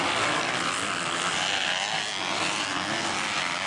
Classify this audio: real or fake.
real